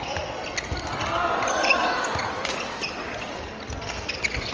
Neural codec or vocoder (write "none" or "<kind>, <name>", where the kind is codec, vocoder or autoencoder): none